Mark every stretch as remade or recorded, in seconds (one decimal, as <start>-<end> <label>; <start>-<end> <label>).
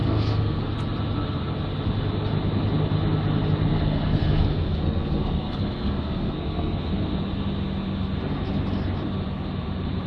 0.0-0.7 remade; 0.7-3.7 recorded; 3.7-6.9 remade; 6.9-10.1 recorded